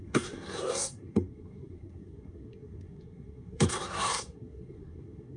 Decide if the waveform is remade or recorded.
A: remade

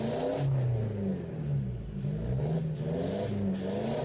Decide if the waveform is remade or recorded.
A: recorded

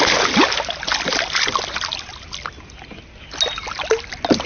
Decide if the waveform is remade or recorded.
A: recorded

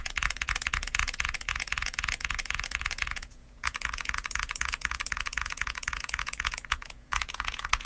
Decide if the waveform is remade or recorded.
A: remade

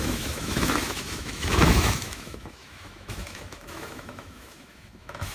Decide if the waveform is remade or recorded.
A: remade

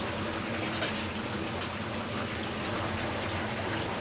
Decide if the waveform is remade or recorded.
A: recorded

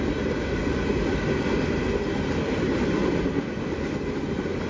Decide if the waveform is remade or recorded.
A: recorded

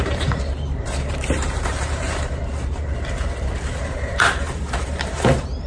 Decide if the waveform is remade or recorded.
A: remade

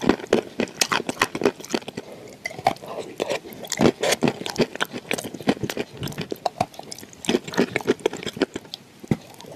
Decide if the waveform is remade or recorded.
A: recorded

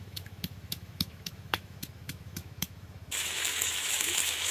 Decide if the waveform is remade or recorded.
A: remade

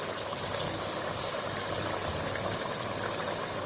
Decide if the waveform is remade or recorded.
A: recorded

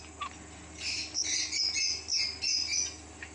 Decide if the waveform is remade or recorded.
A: recorded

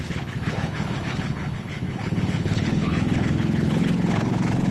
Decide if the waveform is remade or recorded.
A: remade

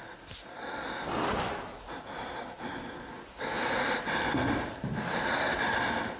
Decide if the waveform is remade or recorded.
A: recorded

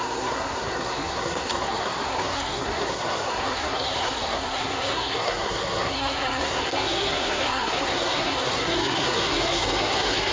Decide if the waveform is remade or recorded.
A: remade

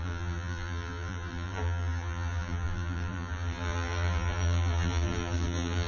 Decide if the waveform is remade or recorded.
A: remade